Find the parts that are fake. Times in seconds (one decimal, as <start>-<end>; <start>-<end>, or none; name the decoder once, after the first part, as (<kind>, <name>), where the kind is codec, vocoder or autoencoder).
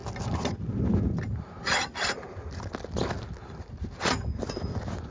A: none